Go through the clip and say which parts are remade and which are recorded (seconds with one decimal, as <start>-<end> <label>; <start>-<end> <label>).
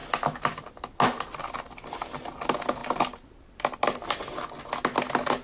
0.0-5.4 recorded